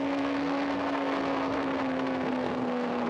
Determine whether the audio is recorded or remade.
remade